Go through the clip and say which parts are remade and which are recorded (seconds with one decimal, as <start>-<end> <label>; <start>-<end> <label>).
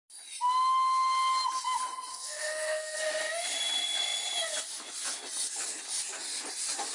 0.0-2.1 recorded; 2.1-3.0 remade; 3.0-6.9 recorded